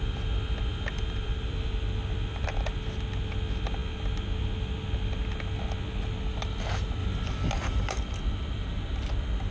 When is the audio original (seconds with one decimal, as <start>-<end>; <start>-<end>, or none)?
0.0-0.7; 2.6-7.0; 7.9-9.5